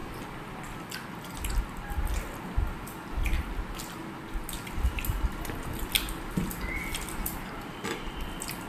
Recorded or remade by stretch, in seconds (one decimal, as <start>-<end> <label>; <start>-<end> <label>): 0.0-8.7 recorded